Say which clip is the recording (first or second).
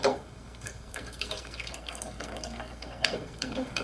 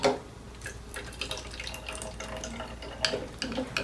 second